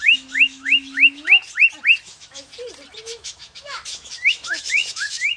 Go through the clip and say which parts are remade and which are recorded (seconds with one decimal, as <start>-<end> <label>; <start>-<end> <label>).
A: 0.0-1.4 remade; 1.4-2.0 recorded; 2.0-2.5 remade; 2.5-3.0 recorded; 3.0-5.4 remade